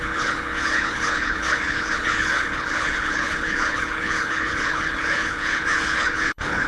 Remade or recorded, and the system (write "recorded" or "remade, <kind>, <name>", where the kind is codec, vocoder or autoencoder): remade, codec, HILCodec